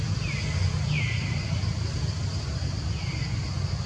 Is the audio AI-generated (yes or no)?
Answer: no